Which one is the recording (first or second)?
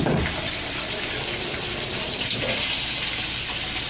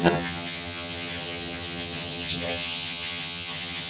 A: first